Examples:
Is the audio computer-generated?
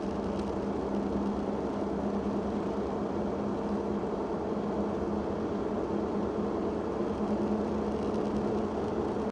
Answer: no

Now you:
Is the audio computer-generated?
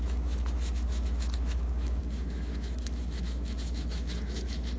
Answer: yes